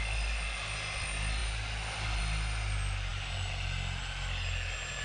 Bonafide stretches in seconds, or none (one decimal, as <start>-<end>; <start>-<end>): 0.0-5.0